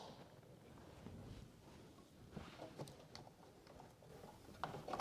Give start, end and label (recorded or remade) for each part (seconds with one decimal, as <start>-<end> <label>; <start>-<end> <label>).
0.0-5.0 recorded